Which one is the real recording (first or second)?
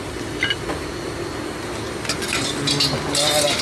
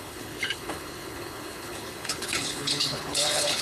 first